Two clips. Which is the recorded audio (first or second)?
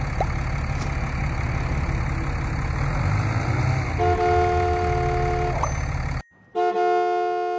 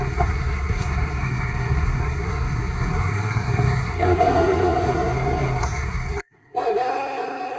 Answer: first